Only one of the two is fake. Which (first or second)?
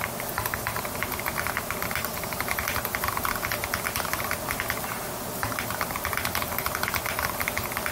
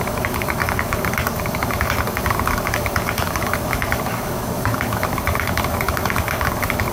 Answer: second